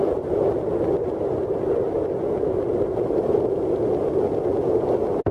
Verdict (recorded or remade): recorded